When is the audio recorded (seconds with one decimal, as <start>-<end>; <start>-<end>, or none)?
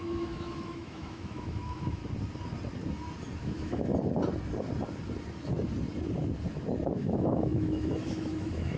2.0-3.4; 3.9-7.0